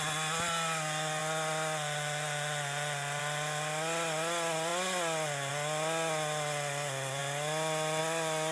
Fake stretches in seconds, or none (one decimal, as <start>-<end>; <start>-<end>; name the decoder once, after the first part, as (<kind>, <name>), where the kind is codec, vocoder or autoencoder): none